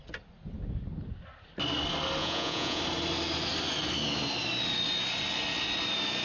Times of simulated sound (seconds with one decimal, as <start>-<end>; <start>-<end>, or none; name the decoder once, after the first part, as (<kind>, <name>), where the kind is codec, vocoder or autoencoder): 2.2-2.8 (vocoder, Vocos)